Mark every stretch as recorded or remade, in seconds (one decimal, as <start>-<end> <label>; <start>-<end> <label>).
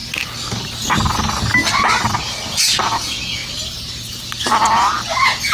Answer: 0.0-2.8 recorded; 2.8-3.4 remade; 3.4-5.1 recorded; 5.1-5.5 remade